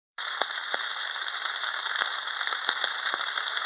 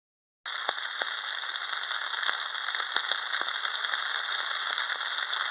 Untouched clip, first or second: second